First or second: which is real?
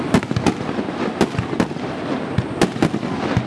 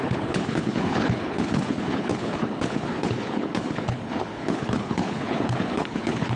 first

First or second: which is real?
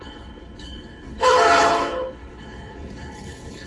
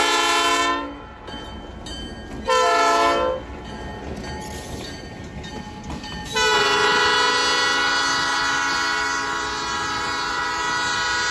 second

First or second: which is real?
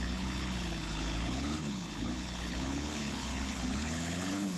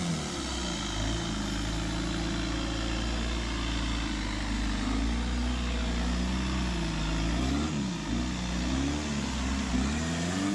second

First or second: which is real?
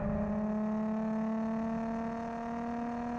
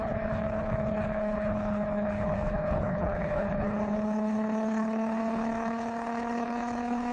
first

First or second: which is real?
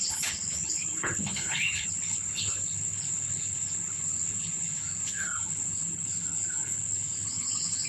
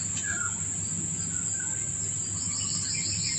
second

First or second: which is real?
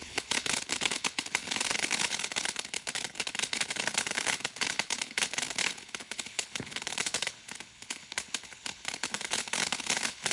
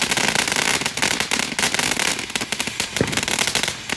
second